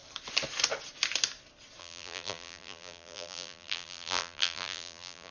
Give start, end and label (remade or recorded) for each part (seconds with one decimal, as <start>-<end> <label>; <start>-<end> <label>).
0.0-1.8 recorded; 1.8-5.3 remade